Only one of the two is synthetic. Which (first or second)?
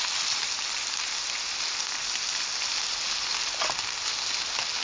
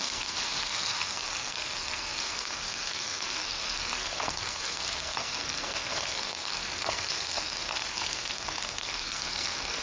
second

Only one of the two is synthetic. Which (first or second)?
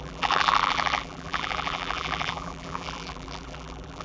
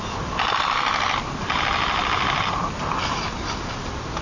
first